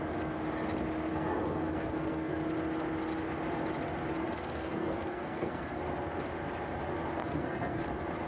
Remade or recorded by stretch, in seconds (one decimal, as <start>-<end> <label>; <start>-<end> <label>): 0.0-1.1 recorded; 1.1-2.3 remade; 2.3-4.2 recorded; 4.2-5.8 remade; 5.8-7.2 recorded; 7.2-7.8 remade; 7.8-8.3 recorded